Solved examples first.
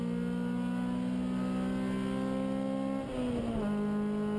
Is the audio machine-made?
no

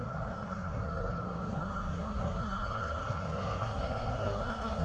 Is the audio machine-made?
yes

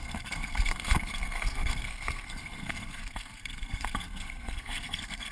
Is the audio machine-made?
yes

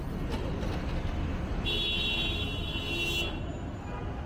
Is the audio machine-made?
no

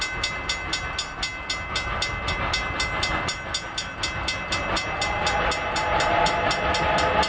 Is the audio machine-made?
no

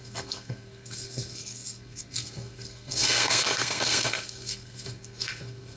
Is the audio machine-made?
yes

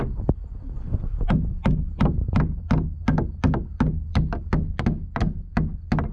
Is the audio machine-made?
no